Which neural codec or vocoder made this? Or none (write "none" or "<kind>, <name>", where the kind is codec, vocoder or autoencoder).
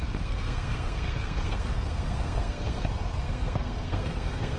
codec, SNAC